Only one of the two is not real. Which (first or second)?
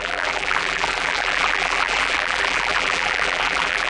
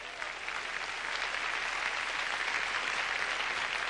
first